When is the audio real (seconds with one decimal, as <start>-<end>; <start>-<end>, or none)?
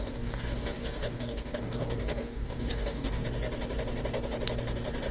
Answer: 3.2-5.1